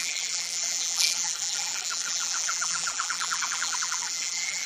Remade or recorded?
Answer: remade